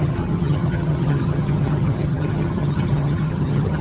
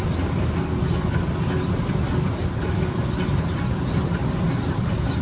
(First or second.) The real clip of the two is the second